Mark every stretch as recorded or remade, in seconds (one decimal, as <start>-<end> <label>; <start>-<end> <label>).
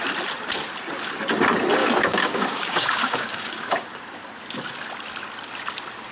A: 0.0-1.8 recorded; 1.8-4.0 remade; 4.0-6.1 recorded